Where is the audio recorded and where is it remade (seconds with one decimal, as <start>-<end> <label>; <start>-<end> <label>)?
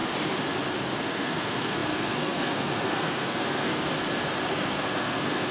0.0-1.0 recorded; 1.0-3.8 remade; 3.8-4.5 recorded; 4.5-5.5 remade